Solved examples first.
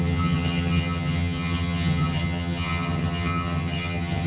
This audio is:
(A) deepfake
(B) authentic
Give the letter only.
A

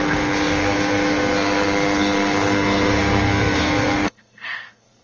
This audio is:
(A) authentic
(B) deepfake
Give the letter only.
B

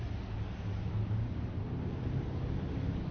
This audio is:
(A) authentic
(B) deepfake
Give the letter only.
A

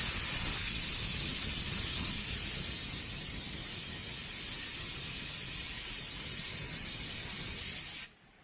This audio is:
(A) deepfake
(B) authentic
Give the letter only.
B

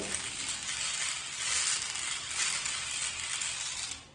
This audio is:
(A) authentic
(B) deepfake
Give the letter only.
A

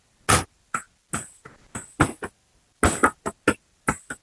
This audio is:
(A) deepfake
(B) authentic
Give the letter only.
B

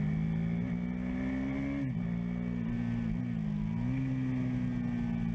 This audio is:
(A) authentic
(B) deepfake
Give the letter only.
A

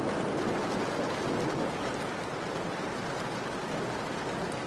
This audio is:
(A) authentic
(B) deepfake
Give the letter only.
A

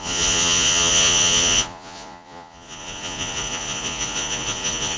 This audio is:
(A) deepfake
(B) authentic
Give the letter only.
A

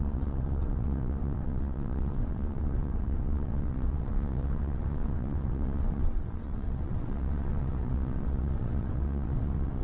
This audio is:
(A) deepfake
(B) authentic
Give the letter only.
A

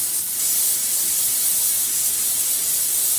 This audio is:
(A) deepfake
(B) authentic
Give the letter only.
A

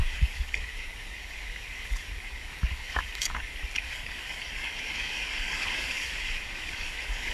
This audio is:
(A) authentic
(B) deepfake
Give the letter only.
B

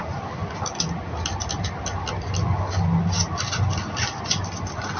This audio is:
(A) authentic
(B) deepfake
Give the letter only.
A